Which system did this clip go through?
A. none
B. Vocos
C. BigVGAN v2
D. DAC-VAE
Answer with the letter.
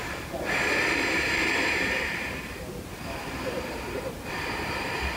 C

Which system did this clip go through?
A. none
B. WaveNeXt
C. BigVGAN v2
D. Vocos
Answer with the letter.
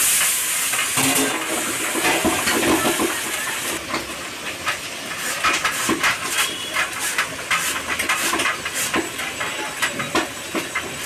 A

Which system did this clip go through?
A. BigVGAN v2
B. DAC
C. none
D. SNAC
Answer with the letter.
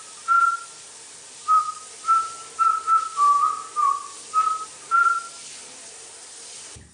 A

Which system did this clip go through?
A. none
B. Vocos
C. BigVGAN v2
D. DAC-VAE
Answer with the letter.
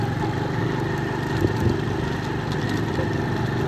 A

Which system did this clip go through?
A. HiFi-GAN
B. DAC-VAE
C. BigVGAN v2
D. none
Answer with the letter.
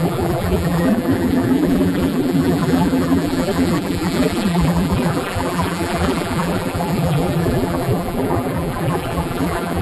C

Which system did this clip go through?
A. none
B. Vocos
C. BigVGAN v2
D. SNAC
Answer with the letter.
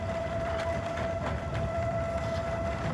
C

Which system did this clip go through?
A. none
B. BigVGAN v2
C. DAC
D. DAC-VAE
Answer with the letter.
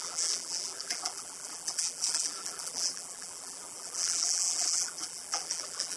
B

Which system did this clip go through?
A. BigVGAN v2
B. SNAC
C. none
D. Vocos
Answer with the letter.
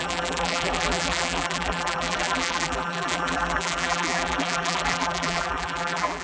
A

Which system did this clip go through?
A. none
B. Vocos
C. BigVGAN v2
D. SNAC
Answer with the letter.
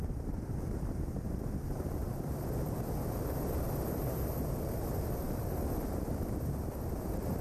C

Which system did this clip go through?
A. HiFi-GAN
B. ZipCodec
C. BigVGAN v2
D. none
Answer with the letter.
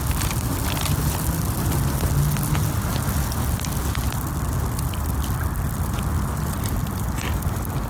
D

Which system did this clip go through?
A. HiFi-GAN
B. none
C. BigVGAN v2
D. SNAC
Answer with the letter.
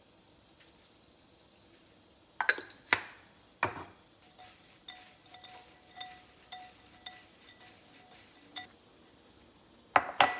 B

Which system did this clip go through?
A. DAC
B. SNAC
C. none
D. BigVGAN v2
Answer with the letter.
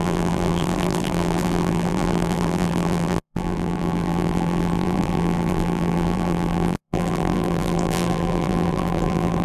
D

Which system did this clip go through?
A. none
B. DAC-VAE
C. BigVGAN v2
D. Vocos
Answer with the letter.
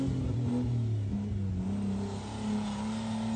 A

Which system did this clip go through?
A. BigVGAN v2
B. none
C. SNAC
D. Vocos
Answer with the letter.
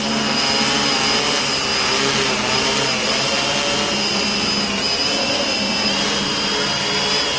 B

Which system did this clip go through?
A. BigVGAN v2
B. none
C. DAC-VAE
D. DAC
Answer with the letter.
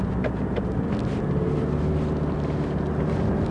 B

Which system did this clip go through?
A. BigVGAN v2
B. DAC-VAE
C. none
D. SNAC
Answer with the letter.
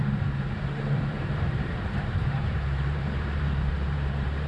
A